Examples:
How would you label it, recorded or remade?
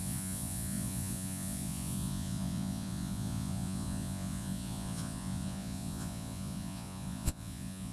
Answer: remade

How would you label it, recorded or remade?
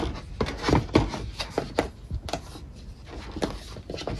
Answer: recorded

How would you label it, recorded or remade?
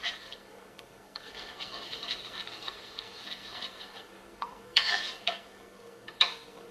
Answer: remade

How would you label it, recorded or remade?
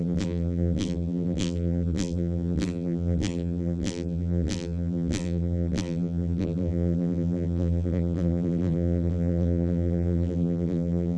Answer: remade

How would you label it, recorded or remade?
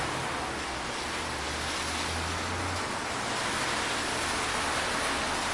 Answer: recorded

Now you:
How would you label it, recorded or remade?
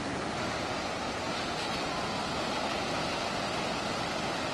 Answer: recorded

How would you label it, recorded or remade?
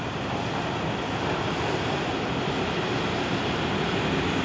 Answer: recorded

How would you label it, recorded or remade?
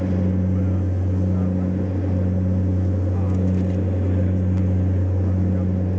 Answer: recorded